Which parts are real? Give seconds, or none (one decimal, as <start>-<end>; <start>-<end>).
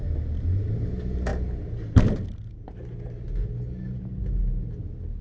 0.0-5.2